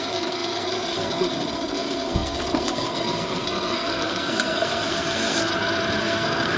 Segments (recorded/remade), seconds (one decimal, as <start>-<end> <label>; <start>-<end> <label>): 0.0-5.5 remade; 5.5-6.0 recorded; 6.0-6.6 remade